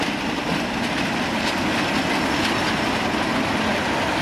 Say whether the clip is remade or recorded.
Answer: recorded